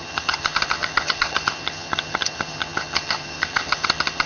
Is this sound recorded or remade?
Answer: remade